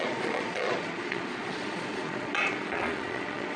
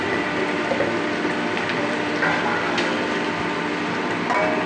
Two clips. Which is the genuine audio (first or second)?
second